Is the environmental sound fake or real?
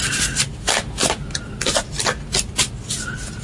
real